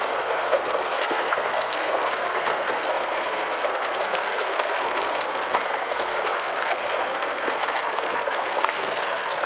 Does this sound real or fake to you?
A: fake